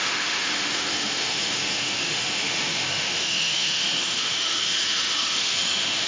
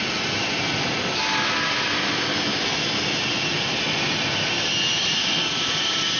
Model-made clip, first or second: first